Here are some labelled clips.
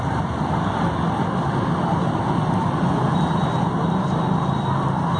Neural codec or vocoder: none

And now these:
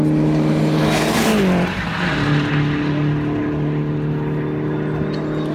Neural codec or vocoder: none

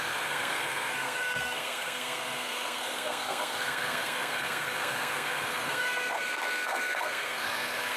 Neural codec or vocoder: codec, SNAC